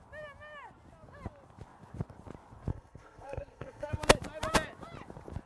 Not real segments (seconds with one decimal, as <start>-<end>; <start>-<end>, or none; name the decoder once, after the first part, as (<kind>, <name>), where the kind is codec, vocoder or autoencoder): 2.7-3.9 (codec, SNAC)